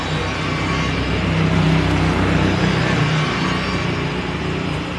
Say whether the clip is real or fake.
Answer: real